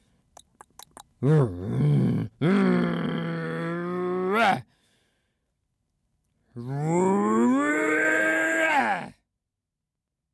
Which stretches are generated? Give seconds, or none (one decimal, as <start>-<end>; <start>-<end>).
7.7-8.8

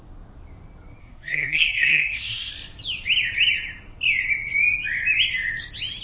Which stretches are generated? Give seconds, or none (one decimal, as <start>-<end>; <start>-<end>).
1.0-2.5

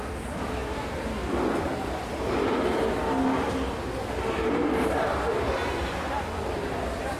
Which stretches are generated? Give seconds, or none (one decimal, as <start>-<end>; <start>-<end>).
none

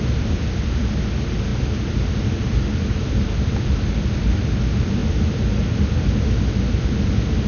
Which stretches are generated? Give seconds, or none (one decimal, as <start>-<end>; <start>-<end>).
none